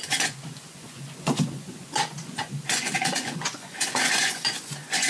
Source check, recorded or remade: remade